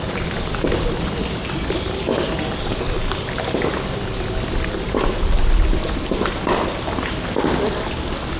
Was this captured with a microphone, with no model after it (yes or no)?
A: yes